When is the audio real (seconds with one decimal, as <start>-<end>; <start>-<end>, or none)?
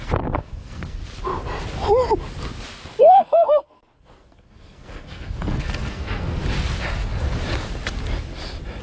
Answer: 1.0-3.0; 6.4-8.8